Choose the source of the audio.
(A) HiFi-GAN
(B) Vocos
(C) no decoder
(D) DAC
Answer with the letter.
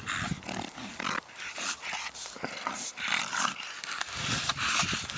C